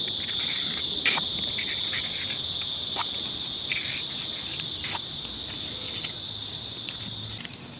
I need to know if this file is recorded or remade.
recorded